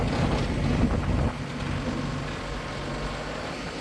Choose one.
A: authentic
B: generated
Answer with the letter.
A